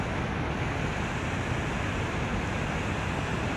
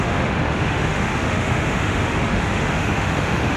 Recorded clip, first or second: first